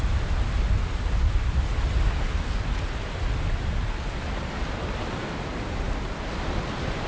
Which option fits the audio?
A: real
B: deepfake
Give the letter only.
A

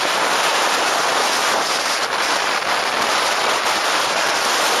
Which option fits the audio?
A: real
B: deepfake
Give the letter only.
B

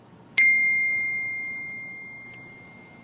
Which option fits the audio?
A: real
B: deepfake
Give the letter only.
A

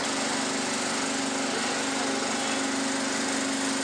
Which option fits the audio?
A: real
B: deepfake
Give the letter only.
A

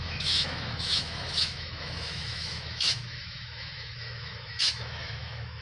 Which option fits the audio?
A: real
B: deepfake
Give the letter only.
B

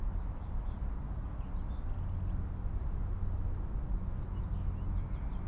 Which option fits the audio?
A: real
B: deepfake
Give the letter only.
A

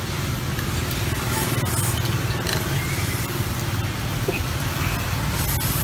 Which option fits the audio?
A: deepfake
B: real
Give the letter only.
B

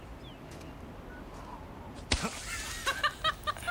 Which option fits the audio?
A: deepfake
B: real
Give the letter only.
B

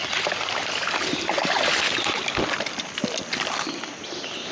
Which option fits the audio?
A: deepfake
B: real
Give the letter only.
A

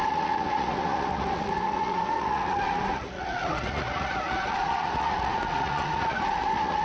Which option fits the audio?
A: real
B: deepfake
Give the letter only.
B